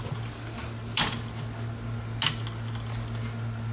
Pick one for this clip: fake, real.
real